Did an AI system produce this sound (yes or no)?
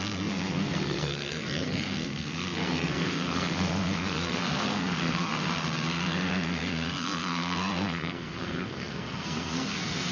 yes